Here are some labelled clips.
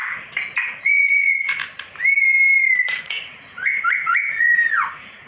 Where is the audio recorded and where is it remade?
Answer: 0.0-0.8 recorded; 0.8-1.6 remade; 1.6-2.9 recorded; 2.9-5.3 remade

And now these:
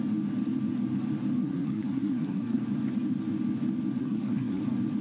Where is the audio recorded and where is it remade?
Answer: 0.0-1.4 recorded; 1.4-2.6 remade; 2.6-4.0 recorded; 4.0-4.6 remade; 4.6-5.0 recorded

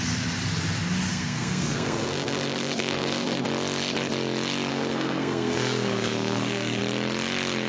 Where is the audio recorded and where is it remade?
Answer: 0.0-1.1 recorded; 1.1-3.5 remade; 3.5-4.7 recorded; 4.7-6.8 remade; 6.8-7.7 recorded

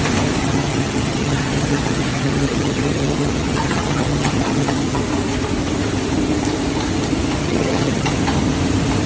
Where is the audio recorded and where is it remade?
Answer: 0.0-0.4 recorded; 0.4-5.0 remade; 5.0-7.4 recorded; 7.4-8.1 remade; 8.1-9.1 recorded

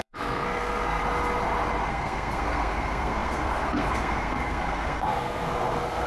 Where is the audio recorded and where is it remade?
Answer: 0.0-1.0 remade; 1.0-1.9 recorded; 1.9-6.1 remade

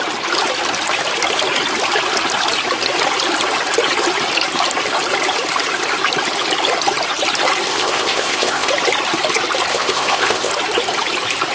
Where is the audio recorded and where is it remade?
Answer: 0.0-7.7 recorded; 7.7-8.7 remade; 8.7-9.7 recorded; 9.7-10.5 remade; 10.5-11.5 recorded